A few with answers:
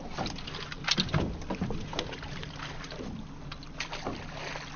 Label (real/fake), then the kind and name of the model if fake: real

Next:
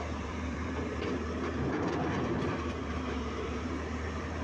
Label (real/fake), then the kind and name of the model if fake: fake, vocoder, BigVGAN v2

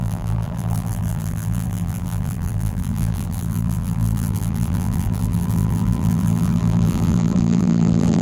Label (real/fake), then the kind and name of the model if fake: fake, vocoder, BigVGAN v2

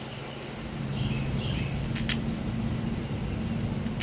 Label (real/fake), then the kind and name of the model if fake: fake, vocoder, BigVGAN v2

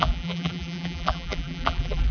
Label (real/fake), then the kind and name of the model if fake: fake, vocoder, BigVGAN v2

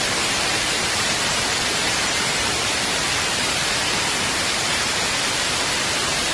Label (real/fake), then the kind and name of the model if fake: fake, vocoder, BigVGAN v2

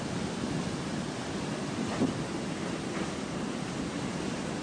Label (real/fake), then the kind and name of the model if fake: real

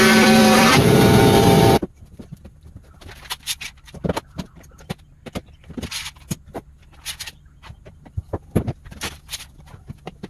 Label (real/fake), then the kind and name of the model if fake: fake, vocoder, BigVGAN v2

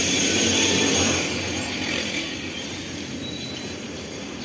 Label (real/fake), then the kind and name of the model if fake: fake, vocoder, BigVGAN v2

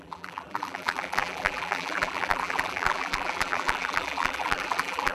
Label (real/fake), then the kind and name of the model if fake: fake, vocoder, BigVGAN v2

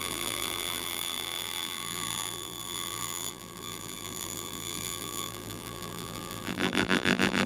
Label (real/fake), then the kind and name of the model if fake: fake, vocoder, BigVGAN v2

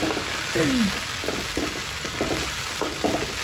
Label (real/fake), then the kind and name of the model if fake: real